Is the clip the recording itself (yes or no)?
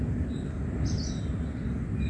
yes